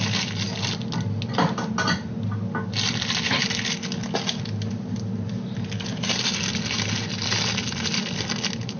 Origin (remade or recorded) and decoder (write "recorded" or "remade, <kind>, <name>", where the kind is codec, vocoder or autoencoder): recorded